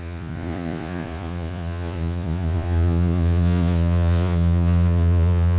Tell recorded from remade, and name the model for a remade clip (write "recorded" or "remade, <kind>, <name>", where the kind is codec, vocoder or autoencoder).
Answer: remade, vocoder, Vocos